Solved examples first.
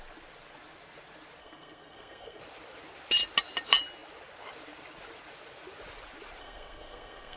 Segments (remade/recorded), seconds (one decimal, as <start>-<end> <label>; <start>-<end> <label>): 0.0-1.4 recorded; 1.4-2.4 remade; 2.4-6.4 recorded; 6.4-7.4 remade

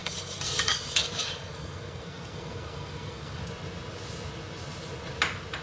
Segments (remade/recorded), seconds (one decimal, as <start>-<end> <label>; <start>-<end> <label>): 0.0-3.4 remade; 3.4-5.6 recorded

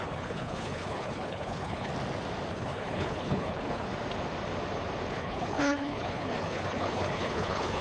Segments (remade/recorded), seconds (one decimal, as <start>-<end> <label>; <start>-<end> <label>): 0.0-1.9 remade; 1.9-2.5 recorded; 2.5-3.9 remade; 3.9-5.1 recorded; 5.1-7.8 remade

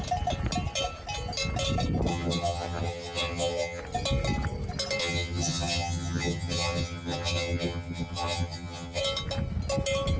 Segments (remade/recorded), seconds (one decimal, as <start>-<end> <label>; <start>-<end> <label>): 0.0-2.1 recorded; 2.1-3.8 remade; 3.8-5.0 recorded; 5.0-9.0 remade; 9.0-10.2 recorded